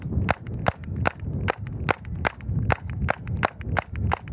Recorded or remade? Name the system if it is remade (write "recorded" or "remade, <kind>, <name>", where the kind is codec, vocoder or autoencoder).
recorded